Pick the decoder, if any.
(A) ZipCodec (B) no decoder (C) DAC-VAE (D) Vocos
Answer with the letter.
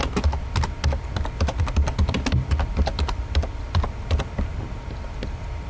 B